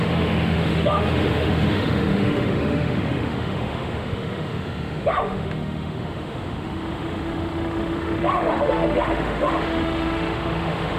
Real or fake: fake